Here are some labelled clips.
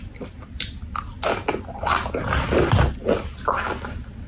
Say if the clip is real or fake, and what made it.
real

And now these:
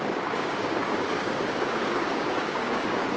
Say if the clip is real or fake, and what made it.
fake, codec, DAC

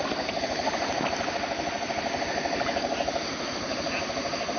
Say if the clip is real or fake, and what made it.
real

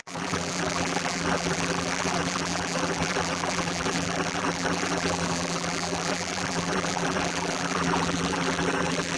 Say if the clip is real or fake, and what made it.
fake, vocoder, BigVGAN v2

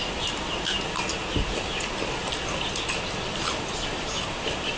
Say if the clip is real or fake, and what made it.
real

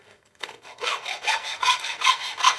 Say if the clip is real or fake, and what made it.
fake, codec, SNAC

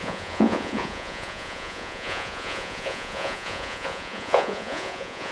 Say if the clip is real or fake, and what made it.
fake, vocoder, Vocos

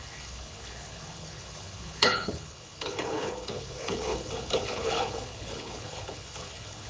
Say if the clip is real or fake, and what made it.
fake, codec, HILCodec